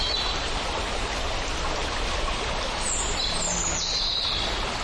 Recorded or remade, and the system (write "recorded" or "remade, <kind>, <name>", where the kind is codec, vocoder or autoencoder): recorded